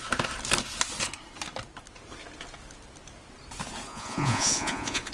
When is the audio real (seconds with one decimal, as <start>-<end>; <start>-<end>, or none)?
0.0-3.9

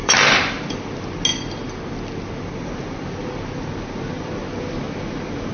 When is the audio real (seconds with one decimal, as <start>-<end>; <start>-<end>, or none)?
0.9-5.5

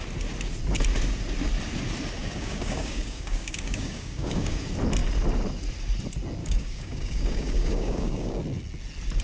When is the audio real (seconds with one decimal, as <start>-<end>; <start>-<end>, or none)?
0.0-2.2; 4.6-6.4; 8.4-9.2

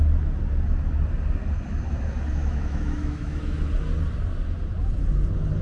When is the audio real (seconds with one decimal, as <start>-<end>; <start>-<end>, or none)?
0.0-2.4; 3.6-5.6

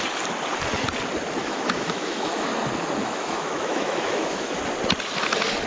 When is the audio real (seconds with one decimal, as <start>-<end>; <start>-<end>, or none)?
0.0-1.4; 2.5-3.0; 4.6-5.7